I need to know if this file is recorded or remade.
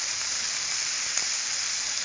recorded